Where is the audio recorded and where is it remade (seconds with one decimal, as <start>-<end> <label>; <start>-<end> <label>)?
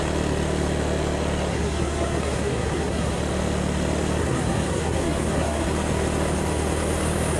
0.0-1.5 recorded; 1.5-3.2 remade; 3.2-4.2 recorded; 4.2-5.7 remade; 5.7-7.4 recorded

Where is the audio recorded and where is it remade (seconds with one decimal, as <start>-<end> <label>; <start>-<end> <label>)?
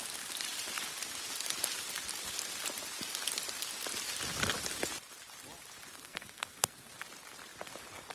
0.0-5.9 recorded; 5.9-6.9 remade; 6.9-8.1 recorded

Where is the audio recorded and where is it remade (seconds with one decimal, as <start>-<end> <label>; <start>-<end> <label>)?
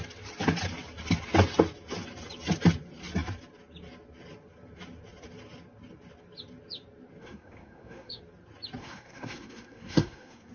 0.0-7.2 recorded; 7.2-8.2 remade; 8.2-8.8 recorded; 8.8-10.5 remade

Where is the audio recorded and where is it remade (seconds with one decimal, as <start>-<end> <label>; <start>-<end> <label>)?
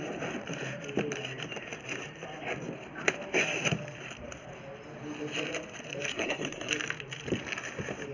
0.0-6.1 recorded; 6.1-6.7 remade; 6.7-8.1 recorded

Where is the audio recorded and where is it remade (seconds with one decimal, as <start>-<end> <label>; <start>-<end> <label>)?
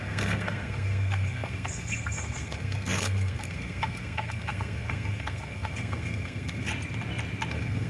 0.0-6.7 remade; 6.7-7.5 recorded; 7.5-7.9 remade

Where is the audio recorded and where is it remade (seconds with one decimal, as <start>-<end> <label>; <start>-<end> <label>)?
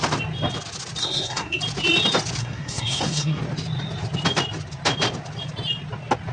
0.0-1.0 recorded; 1.0-1.6 remade; 1.6-2.4 recorded; 2.4-3.4 remade; 3.4-6.3 recorded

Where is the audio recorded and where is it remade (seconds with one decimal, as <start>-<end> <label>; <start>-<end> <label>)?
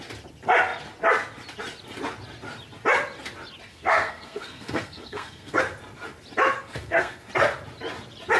0.0-3.7 recorded; 3.7-5.6 remade; 5.6-6.6 recorded; 6.6-7.3 remade; 7.3-8.4 recorded